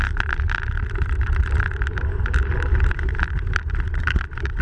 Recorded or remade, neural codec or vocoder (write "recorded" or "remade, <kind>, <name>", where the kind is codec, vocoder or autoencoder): remade, vocoder, BigVGAN v2